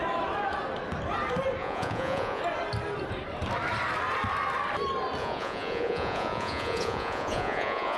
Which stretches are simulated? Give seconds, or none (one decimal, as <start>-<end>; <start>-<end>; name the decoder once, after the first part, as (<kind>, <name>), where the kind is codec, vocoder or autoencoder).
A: 1.6-2.4 (vocoder, Vocos); 5.2-8.0